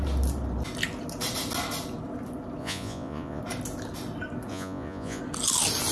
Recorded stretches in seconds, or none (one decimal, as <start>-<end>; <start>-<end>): 0.0-2.6; 3.4-4.5; 5.2-5.9